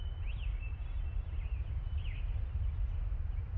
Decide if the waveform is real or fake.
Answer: fake